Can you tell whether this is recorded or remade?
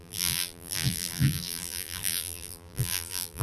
remade